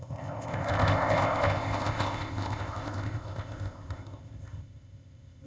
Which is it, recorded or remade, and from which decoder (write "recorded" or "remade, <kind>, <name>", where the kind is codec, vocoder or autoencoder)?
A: remade, codec, ZipCodec